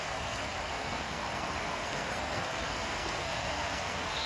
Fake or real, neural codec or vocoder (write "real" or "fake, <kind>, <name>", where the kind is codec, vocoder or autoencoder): fake, codec, SNAC